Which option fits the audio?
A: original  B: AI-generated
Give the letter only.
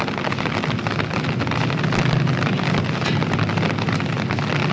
A